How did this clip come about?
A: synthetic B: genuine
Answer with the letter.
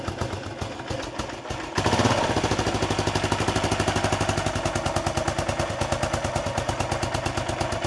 B